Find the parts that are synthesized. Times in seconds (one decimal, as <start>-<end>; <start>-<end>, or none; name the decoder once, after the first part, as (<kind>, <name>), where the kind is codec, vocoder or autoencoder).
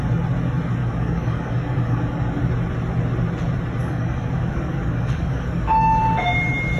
0.8-2.4 (codec, DAC); 3.8-6.0